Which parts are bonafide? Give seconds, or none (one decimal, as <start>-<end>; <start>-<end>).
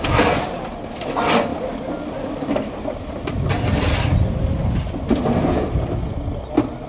0.0-6.9